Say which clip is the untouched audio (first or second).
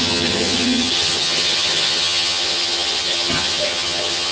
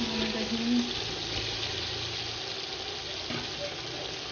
second